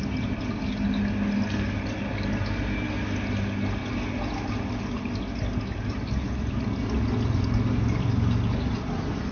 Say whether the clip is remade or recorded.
recorded